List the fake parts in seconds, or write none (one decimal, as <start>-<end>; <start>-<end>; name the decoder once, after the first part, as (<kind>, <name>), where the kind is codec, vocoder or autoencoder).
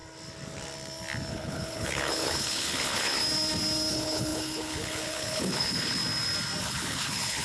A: 1.3-3.2 (codec, HILCodec); 3.9-6.0; 6.6-7.4